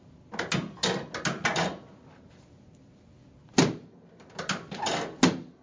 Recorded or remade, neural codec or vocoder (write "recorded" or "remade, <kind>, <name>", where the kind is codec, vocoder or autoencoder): recorded